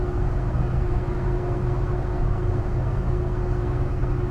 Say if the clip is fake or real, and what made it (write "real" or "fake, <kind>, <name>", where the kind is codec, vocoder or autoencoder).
fake, codec, SNAC